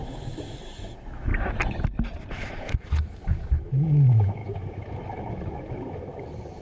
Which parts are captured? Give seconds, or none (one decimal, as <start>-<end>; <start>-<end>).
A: 1.3-2.3